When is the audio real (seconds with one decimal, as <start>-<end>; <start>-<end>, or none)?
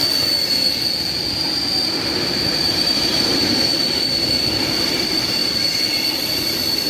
0.0-2.4; 5.4-6.2